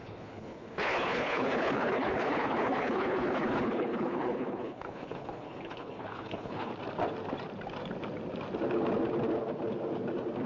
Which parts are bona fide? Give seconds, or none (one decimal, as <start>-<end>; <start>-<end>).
6.7-10.5